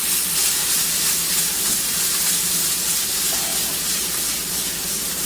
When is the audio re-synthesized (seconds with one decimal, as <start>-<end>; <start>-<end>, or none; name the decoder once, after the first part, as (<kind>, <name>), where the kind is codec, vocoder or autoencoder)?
0.0-5.3 (vocoder, BigVGAN v2)